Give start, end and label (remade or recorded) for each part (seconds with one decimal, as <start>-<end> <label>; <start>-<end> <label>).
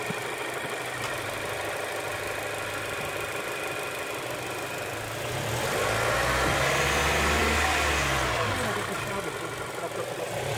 0.0-10.6 recorded